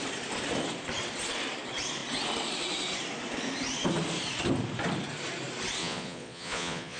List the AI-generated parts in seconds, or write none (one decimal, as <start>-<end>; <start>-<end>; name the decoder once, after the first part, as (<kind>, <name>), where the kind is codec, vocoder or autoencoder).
5.8-7.0 (vocoder, Vocos)